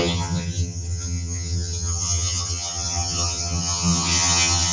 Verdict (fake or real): fake